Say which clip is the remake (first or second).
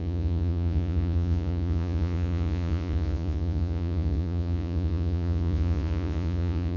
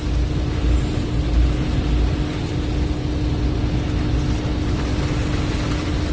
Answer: first